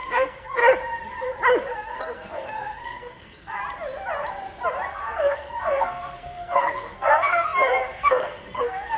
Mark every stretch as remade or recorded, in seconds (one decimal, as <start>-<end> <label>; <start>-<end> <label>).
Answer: 0.0-0.6 remade; 0.6-1.7 recorded; 1.7-3.6 remade; 3.6-4.9 recorded; 4.9-9.0 remade